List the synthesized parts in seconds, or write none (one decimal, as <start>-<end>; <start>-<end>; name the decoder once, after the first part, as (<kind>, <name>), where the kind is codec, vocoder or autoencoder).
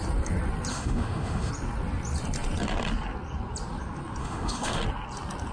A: 0.7-1.5 (autoencoder, DAC-VAE); 4.2-4.8